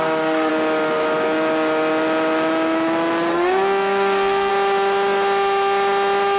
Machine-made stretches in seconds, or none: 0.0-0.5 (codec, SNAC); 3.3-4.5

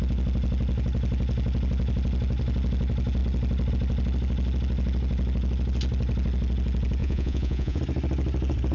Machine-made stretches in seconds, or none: 7.0-7.8 (vocoder, Vocos)

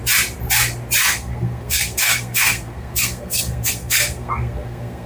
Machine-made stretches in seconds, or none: 1.0-5.1 (codec, SNAC)

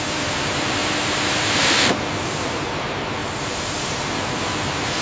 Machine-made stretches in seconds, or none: 0.8-1.7 (vocoder, BigVGAN v2); 3.2-4.0

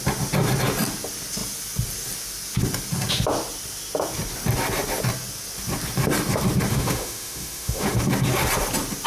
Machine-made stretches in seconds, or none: 6.7-8.0 (autoencoder, DAC-VAE)